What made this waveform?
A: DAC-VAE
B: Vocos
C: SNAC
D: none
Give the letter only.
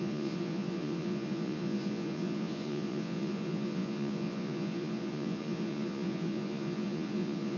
B